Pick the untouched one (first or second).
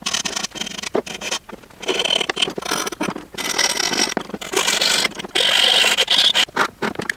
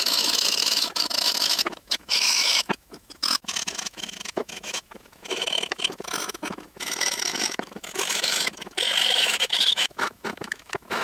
first